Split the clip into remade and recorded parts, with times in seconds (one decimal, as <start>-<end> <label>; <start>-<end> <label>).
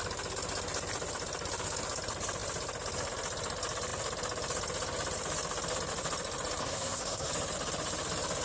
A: 0.0-6.6 recorded; 6.6-7.3 remade; 7.3-8.4 recorded